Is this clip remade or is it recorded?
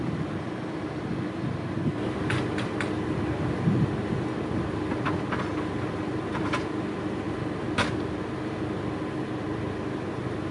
recorded